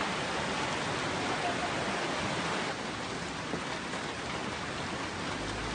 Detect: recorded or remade recorded